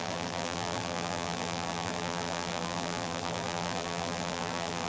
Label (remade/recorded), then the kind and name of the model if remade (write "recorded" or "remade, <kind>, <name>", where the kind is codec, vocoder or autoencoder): remade, vocoder, BigVGAN v2